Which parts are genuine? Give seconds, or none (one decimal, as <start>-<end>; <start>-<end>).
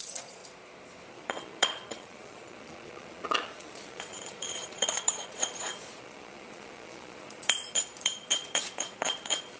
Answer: 0.4-1.1